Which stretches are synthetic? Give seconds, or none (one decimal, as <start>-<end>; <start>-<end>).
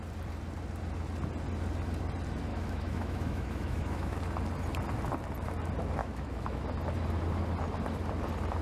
2.5-4.2; 6.0-6.6